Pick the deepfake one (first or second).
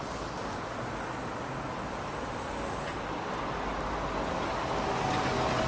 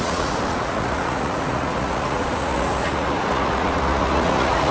second